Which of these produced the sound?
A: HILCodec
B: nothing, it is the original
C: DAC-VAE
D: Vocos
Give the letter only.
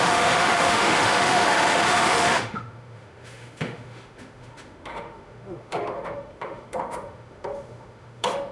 C